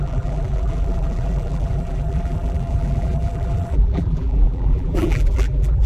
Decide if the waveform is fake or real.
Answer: fake